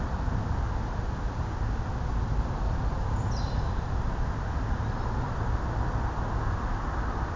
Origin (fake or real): real